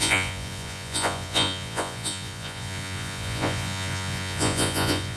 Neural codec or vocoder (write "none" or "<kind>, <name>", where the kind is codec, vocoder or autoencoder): vocoder, Vocos